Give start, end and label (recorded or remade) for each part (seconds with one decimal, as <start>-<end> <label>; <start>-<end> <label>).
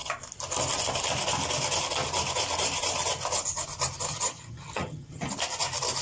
0.0-4.1 recorded; 4.1-5.3 remade; 5.3-6.0 recorded